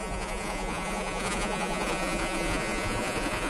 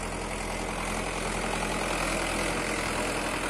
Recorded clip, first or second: second